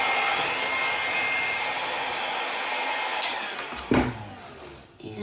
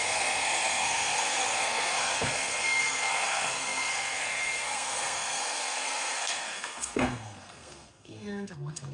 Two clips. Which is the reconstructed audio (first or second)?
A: second